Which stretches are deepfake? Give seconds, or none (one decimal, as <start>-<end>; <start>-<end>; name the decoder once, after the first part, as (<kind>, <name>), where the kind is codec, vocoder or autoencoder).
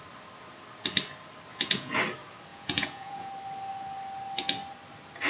1.5-2.0 (vocoder, Vocos); 2.5-3.3